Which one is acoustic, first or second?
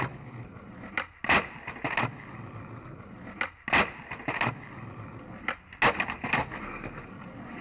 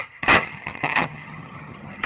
first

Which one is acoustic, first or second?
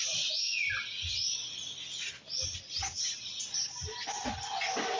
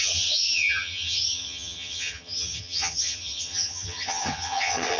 first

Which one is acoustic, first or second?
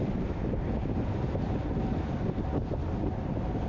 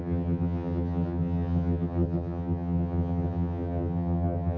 first